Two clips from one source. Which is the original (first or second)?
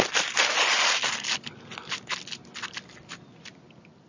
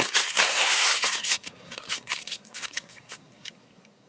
first